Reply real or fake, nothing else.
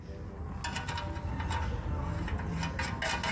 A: real